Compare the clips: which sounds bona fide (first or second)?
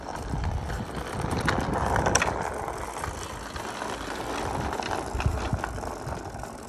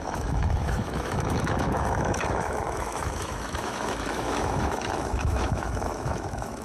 first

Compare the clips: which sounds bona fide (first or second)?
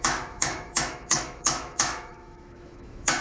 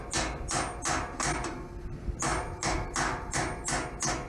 second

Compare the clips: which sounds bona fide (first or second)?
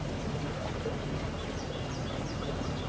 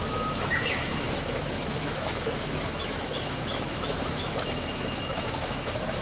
first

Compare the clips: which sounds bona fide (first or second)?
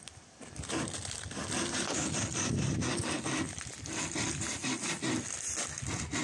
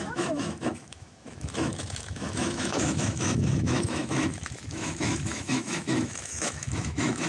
first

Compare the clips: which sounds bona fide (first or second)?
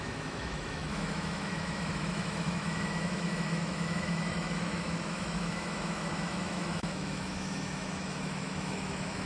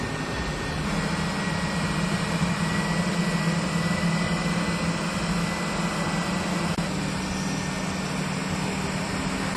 second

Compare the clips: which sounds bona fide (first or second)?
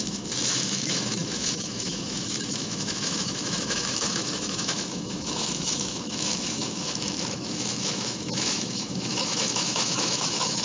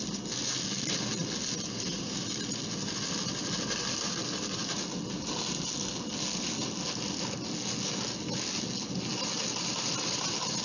second